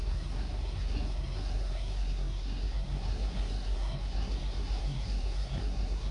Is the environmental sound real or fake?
fake